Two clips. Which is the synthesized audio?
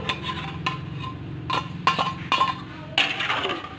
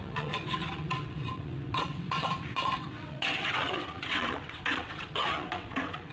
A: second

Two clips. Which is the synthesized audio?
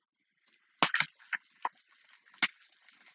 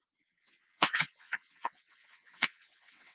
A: second